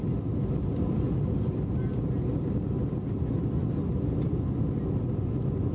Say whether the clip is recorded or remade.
recorded